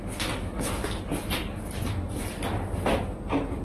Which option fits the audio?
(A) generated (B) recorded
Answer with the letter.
B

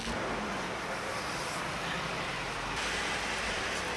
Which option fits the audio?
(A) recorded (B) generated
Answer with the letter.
A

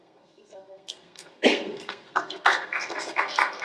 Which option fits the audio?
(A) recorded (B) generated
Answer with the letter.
B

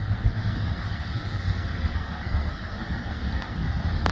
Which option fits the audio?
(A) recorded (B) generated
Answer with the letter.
B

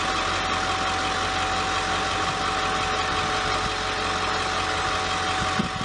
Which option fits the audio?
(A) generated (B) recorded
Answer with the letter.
B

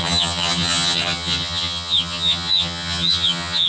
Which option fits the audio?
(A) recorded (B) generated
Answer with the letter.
B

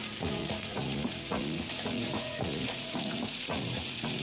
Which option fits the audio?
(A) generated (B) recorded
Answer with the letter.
A